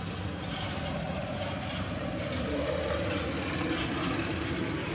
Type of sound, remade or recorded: recorded